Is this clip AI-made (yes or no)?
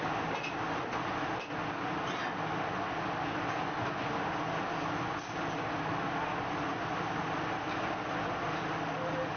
no